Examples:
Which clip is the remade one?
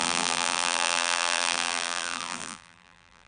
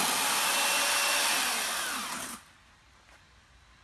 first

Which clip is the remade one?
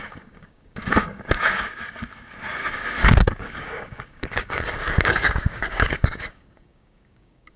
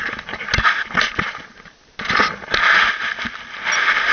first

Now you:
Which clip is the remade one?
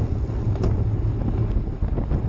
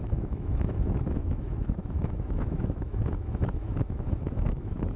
second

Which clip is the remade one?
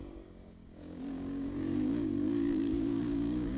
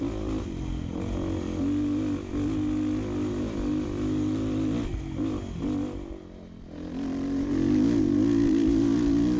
first